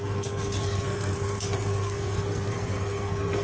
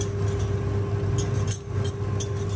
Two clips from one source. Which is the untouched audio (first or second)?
second